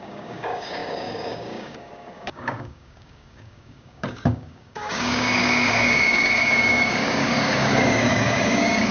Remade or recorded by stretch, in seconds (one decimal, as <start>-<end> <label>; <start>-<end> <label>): 0.0-8.9 remade